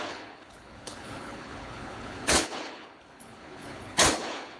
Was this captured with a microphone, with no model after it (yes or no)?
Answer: no